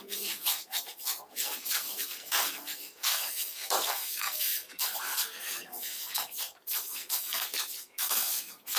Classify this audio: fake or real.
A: fake